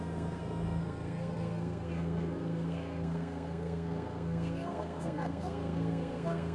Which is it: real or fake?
fake